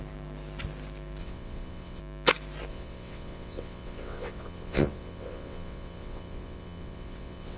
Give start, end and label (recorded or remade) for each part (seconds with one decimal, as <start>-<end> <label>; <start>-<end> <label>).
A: 0.0-1.2 recorded; 1.2-2.0 remade; 2.0-2.7 recorded; 2.7-7.6 remade